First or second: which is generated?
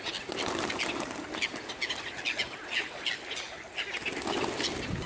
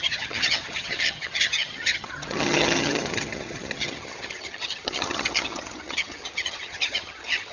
second